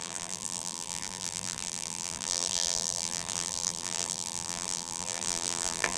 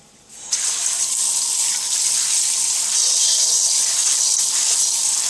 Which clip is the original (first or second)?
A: second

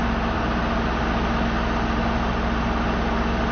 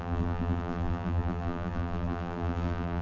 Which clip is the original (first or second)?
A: first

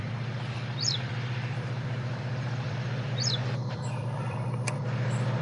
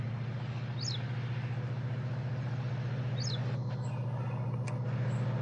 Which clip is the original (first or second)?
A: second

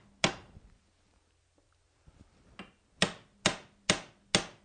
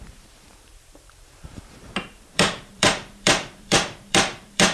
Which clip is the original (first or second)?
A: first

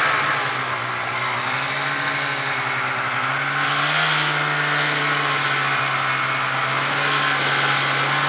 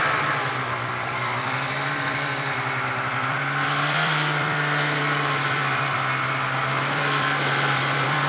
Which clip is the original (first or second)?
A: first